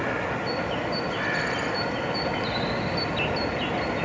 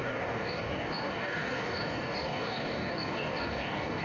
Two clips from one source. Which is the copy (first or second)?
second